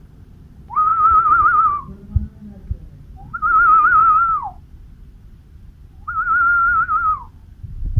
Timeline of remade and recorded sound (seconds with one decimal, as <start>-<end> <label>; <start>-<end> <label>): 0.0-0.9 remade; 0.9-3.0 recorded; 3.0-4.0 remade; 4.0-7.3 recorded; 7.3-8.0 remade